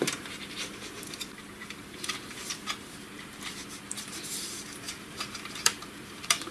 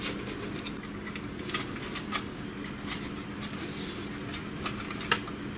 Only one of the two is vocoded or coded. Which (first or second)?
first